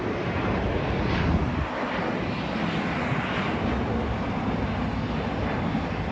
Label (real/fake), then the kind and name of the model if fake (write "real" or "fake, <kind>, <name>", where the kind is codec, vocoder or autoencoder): real